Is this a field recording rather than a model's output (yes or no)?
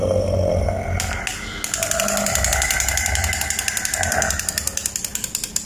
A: yes